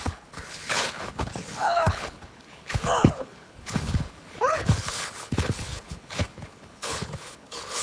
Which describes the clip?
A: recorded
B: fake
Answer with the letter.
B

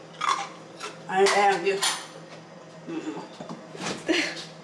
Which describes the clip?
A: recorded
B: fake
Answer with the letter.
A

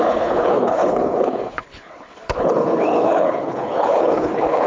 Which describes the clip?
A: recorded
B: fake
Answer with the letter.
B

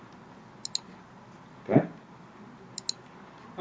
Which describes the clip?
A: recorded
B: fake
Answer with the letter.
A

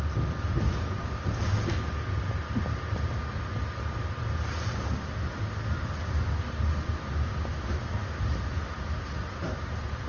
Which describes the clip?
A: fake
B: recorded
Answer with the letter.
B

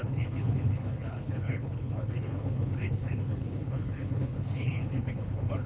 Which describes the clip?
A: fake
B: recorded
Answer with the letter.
A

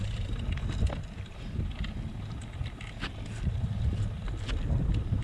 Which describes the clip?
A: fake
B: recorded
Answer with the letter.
B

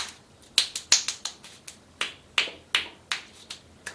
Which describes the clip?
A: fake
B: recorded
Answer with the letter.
B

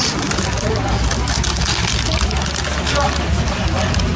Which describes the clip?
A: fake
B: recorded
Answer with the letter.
B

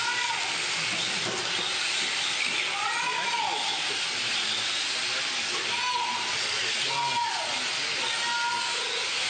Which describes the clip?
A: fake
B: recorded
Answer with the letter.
B